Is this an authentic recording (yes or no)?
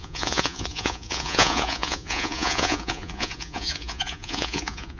no